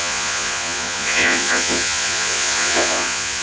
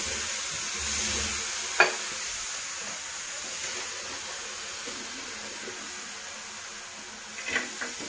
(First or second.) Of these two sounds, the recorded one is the second